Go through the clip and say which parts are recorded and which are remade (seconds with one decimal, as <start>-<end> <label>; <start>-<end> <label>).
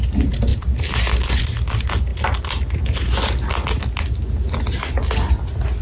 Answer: 0.0-5.8 recorded